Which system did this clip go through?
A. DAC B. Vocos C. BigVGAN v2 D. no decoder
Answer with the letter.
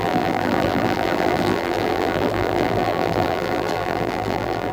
C